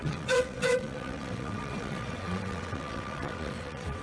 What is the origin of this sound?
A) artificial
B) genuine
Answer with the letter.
A